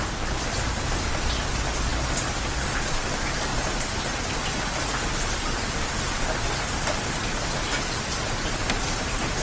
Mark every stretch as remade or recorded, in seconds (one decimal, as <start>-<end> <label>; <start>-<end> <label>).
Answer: 0.0-9.4 recorded

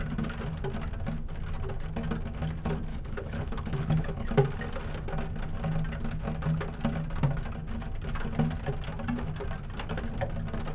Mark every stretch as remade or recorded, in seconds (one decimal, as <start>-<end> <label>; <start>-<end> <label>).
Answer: 0.0-2.9 recorded; 2.9-4.3 remade; 4.3-10.7 recorded